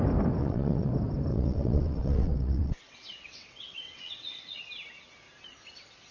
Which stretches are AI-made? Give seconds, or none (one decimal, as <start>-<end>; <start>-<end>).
0.4-0.9; 1.3-4.6